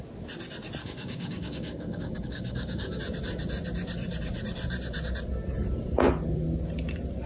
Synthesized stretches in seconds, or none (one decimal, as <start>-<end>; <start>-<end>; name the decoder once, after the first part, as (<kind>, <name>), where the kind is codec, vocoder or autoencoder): 0.8-3.0 (codec, DAC)